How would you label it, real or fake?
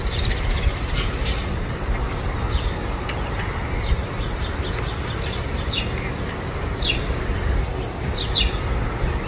real